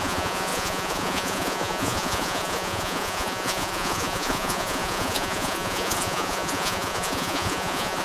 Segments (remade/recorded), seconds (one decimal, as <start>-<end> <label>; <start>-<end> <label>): 0.0-8.0 remade